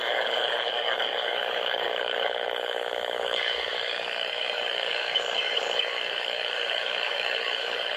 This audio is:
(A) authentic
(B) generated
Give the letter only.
B